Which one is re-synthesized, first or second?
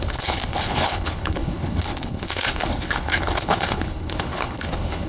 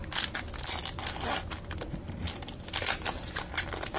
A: first